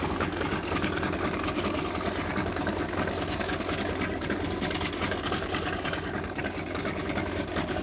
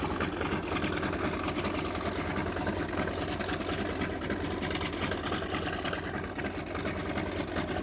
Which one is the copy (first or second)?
first